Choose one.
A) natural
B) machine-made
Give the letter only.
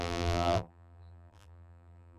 B